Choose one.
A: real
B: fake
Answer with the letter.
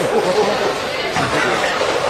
A